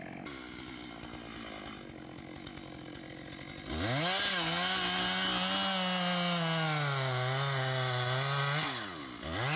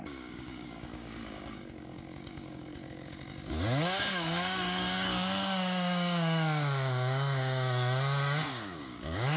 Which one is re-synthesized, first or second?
second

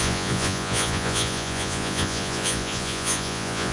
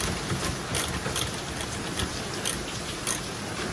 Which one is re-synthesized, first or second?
first